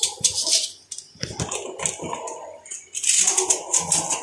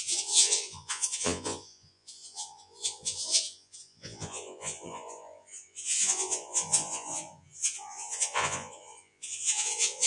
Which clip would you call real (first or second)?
first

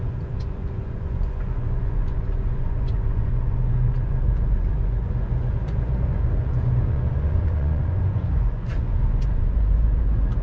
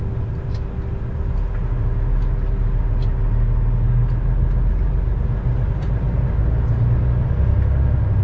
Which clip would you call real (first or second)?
second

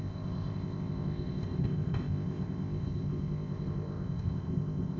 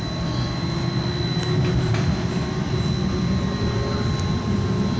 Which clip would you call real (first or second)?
second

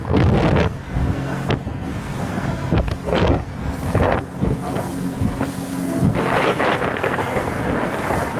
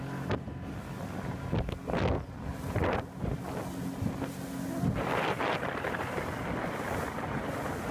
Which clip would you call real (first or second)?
second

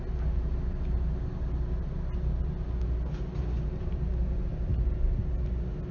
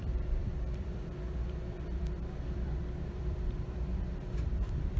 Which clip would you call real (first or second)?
first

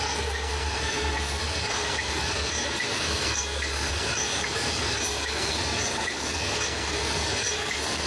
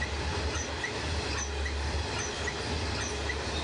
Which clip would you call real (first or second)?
second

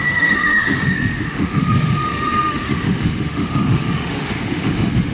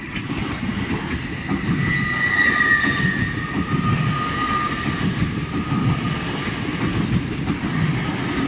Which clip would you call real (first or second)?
second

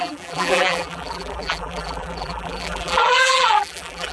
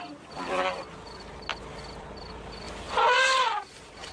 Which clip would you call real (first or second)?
second